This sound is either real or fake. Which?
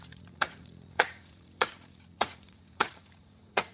fake